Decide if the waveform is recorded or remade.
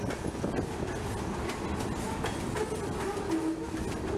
recorded